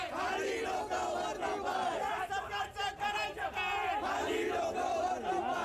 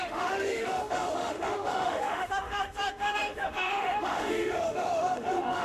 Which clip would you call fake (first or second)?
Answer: second